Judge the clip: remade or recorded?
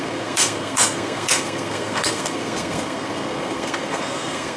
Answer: remade